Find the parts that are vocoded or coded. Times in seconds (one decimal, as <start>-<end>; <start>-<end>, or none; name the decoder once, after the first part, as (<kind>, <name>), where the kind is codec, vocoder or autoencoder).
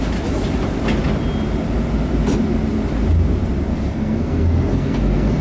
3.7-5.4 (codec, SNAC)